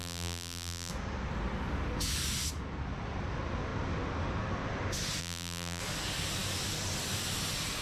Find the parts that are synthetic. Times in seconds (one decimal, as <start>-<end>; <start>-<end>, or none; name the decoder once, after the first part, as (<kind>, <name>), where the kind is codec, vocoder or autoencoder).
0.0-0.9 (vocoder, BigVGAN v2); 5.2-5.8